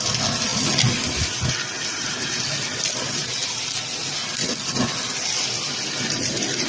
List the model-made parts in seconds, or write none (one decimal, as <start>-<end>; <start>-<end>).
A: none